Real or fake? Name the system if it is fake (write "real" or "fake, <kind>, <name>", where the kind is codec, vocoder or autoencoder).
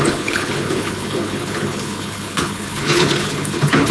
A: fake, codec, HILCodec